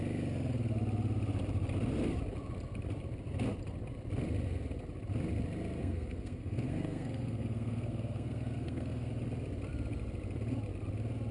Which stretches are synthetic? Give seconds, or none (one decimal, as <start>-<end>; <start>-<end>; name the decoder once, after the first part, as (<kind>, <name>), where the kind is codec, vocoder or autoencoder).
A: 5.8-9.1 (codec, SNAC)